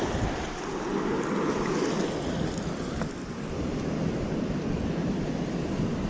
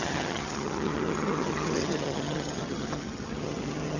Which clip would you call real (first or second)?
first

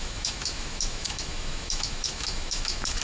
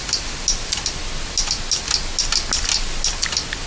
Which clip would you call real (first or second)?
second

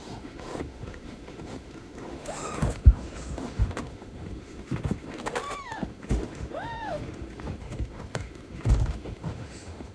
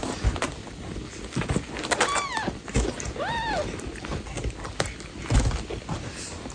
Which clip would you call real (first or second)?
second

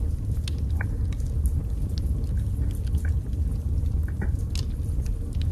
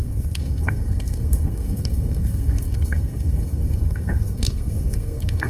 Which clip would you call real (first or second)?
first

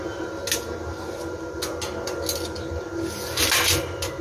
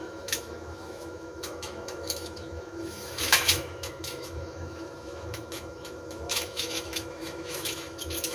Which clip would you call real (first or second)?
first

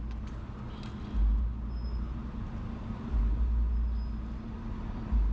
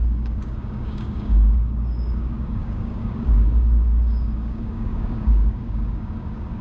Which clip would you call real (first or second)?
first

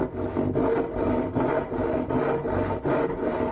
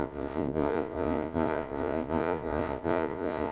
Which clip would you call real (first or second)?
first